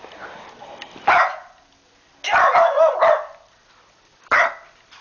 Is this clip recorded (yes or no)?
yes